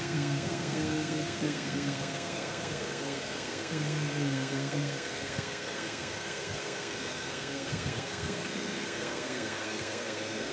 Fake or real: fake